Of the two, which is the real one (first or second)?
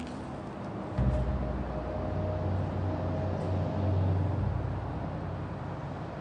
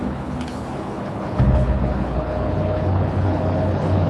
first